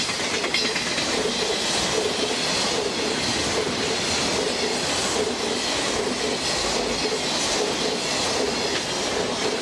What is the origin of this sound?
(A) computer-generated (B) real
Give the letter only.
B